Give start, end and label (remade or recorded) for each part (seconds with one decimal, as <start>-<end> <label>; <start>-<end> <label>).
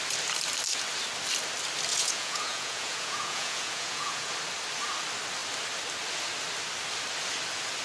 0.0-1.9 recorded; 1.9-4.3 remade; 4.3-7.8 recorded